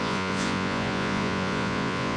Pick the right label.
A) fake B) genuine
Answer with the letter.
A